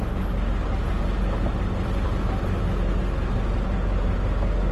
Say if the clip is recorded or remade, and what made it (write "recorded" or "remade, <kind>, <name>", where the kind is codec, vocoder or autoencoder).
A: recorded